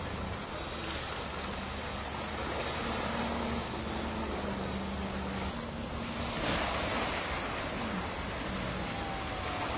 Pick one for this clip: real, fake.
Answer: real